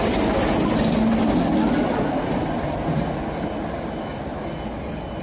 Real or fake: real